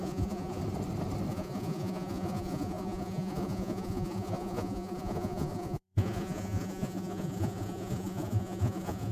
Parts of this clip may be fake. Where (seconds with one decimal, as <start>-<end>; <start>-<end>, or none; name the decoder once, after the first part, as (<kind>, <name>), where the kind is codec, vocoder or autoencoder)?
0.0-0.6 (vocoder, Vocos); 1.3-9.1